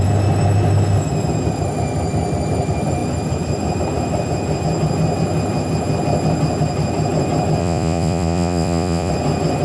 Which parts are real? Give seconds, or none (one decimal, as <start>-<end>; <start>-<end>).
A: 0.0-7.6; 9.1-9.6